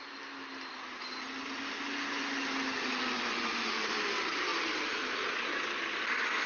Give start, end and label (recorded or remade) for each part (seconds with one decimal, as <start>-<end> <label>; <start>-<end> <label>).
0.0-6.5 recorded